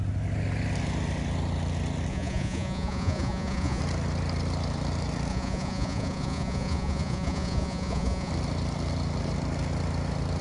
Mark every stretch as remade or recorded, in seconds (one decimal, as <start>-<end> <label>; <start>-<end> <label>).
0.0-2.1 recorded; 2.1-3.8 remade; 3.8-5.3 recorded; 5.3-8.3 remade; 8.3-10.4 recorded